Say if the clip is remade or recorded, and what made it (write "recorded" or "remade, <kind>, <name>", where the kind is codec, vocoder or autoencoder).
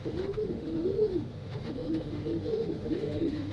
remade, autoencoder, DAC-VAE